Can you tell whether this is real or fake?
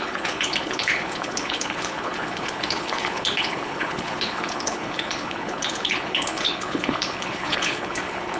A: fake